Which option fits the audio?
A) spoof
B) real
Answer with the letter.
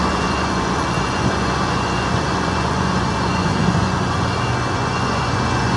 A